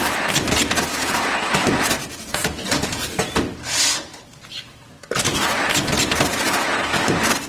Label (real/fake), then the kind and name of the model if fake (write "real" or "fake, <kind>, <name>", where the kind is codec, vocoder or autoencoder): real